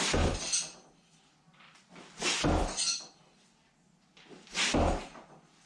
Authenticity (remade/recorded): recorded